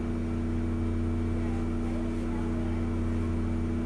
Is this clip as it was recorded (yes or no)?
yes